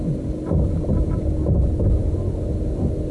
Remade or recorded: recorded